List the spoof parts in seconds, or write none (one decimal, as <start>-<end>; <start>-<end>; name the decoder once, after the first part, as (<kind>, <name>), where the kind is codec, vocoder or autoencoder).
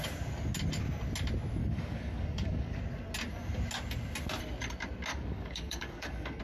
1.6-2.8 (codec, DAC); 5.1-6.4